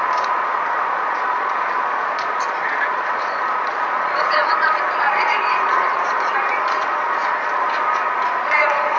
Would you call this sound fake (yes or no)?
yes